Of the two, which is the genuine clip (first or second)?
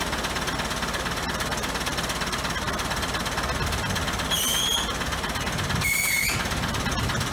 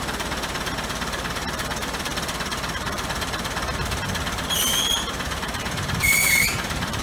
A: first